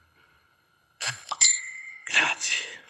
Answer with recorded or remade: remade